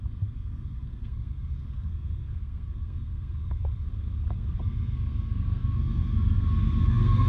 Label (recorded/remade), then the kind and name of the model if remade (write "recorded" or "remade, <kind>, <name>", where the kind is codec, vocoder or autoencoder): remade, codec, SNAC